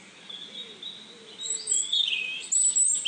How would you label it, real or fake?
real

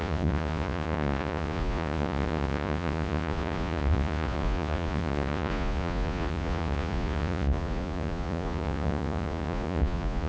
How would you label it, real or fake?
fake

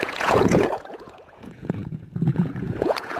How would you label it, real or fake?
fake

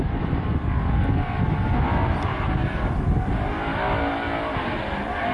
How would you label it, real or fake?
real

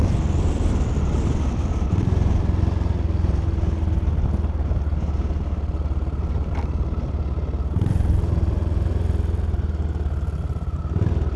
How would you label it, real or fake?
real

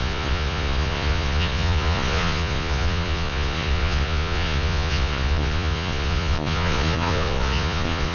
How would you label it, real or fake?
fake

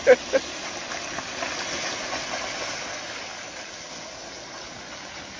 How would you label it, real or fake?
real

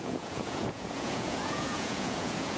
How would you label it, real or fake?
fake